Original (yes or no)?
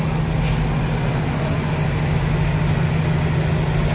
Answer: yes